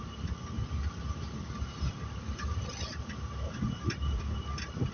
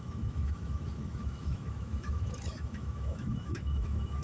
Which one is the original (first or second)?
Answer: first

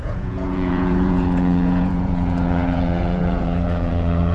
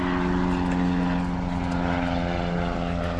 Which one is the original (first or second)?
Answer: second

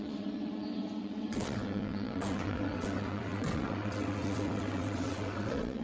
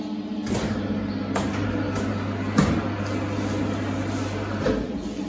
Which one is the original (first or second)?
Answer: second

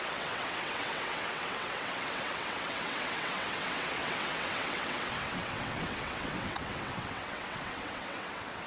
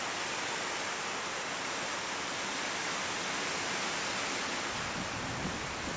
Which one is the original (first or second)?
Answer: second